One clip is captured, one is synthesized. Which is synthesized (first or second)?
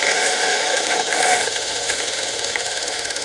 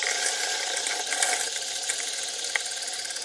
first